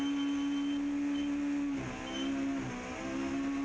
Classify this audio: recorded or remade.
recorded